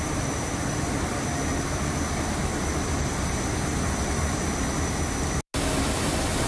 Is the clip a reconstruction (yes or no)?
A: no